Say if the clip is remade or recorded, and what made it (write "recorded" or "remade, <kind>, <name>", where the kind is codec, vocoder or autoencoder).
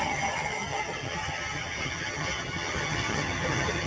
remade, vocoder, HiFi-GAN